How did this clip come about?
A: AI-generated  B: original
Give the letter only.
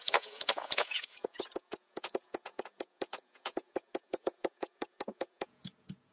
A